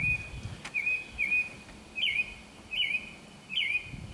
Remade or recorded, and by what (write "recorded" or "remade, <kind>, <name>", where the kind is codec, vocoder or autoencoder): recorded